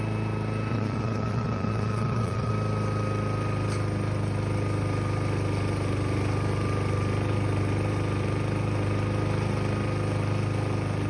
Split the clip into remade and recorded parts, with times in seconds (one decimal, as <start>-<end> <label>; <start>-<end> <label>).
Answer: 0.0-0.7 recorded; 0.7-2.5 remade; 2.5-11.1 recorded